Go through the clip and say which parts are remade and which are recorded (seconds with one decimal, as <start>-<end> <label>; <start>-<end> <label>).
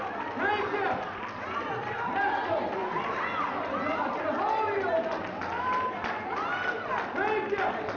0.0-8.0 recorded